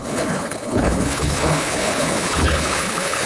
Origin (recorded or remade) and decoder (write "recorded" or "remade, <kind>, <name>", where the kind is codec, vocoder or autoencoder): remade, codec, HILCodec